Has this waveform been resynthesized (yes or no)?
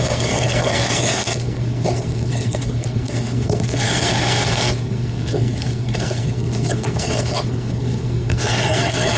yes